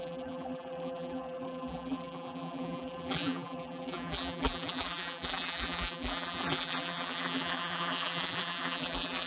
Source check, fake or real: fake